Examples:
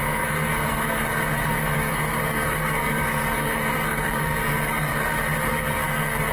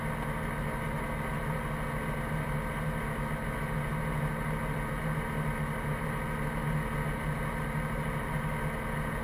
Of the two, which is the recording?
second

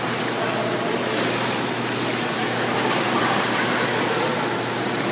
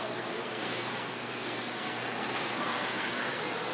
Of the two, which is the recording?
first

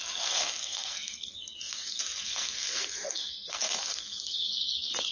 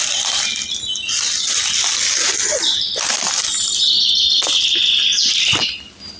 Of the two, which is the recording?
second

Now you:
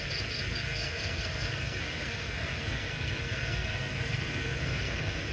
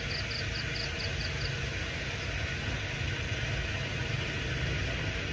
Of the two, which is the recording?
second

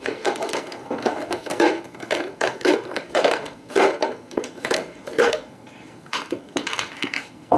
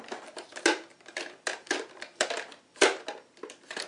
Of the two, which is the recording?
second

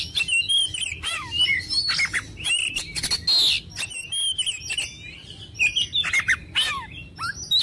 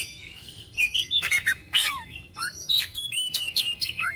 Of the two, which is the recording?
first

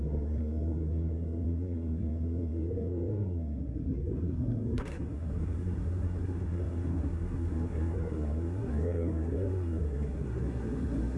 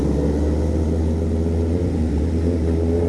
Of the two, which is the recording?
second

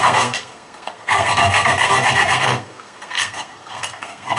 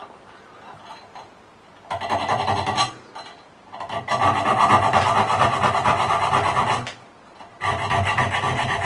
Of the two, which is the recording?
second